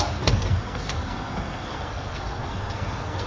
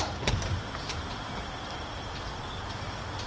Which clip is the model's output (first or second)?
first